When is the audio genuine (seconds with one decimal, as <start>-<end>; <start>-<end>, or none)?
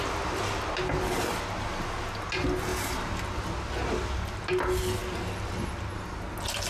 0.0-6.7